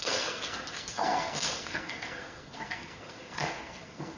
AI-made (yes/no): yes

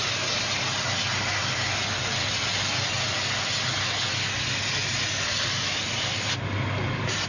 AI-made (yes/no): no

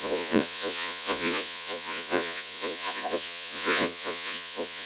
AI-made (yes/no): yes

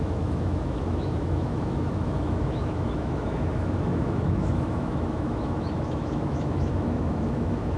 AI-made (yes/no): yes